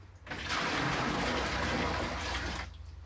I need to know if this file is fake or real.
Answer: real